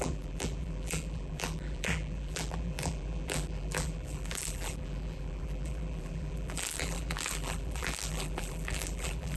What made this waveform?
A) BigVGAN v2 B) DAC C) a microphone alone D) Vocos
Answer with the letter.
A